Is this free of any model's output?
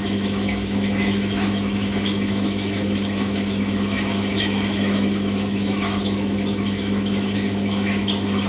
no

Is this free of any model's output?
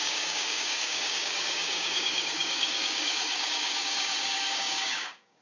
no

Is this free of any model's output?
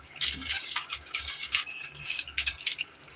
no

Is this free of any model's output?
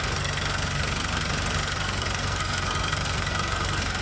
no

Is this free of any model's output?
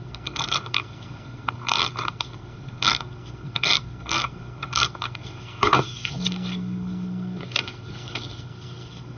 no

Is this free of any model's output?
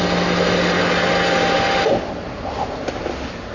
yes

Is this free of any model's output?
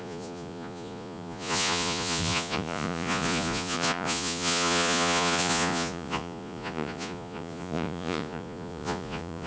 no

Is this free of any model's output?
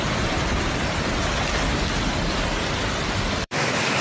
no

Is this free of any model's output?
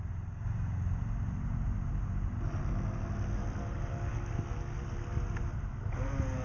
yes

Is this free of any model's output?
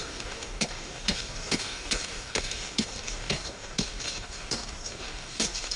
no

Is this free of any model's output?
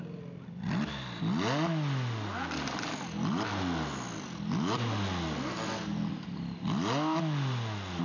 yes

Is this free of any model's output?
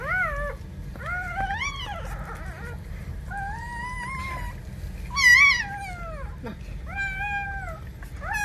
yes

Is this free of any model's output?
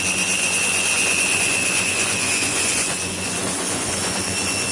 no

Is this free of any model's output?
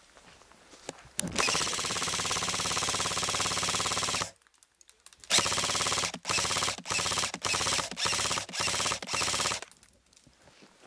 yes